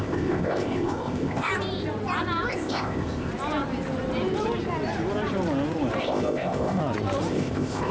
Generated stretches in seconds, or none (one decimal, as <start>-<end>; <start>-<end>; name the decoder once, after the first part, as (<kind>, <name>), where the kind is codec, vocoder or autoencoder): 0.0-1.5 (codec, ZipCodec); 2.5-3.3; 6.0-6.8; 7.3-7.9